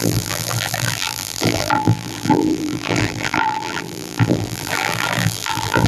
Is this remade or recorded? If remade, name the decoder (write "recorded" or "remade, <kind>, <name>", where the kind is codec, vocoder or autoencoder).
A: remade, vocoder, BigVGAN v2